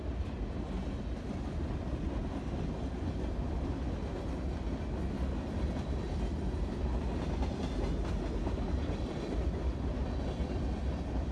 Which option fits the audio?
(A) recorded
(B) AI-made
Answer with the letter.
A